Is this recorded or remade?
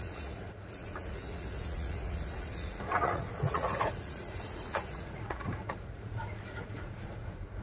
remade